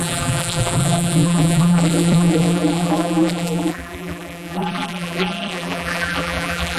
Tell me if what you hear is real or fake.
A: fake